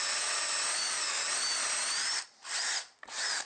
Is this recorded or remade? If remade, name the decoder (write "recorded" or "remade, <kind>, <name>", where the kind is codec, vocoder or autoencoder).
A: remade, vocoder, BigVGAN v2